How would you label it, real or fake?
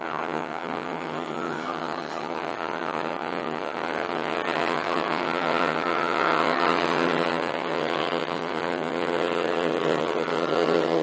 fake